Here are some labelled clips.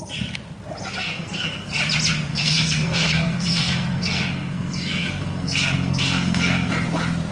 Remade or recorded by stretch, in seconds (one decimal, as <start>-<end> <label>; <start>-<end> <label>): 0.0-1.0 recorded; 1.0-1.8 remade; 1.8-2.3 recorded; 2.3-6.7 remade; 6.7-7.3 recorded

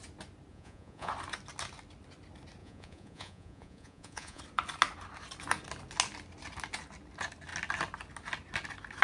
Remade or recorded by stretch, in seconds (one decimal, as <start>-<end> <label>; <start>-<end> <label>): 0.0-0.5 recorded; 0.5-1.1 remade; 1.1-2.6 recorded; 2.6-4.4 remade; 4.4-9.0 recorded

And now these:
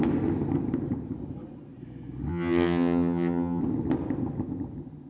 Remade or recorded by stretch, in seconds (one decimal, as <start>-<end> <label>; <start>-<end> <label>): 0.0-2.3 recorded; 2.3-3.6 remade; 3.6-5.1 recorded

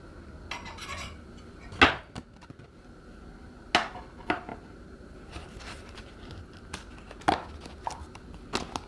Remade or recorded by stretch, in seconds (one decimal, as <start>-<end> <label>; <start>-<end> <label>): 0.0-4.5 recorded; 4.5-6.3 remade; 6.3-8.9 recorded

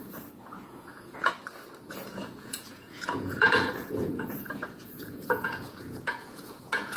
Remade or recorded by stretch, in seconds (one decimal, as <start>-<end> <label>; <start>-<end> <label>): 0.0-1.3 remade; 1.3-1.9 recorded; 1.9-7.0 remade

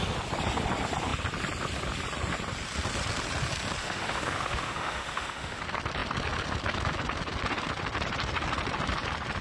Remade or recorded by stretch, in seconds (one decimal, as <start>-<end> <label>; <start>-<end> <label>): 0.0-3.8 recorded; 3.8-5.6 remade; 5.6-9.4 recorded

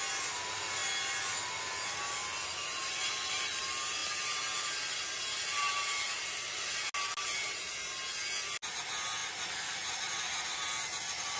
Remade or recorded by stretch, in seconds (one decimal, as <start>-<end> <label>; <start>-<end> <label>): 0.0-11.4 recorded